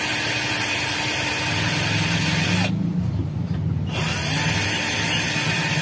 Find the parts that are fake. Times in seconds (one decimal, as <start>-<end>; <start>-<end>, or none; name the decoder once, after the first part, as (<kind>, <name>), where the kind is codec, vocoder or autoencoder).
none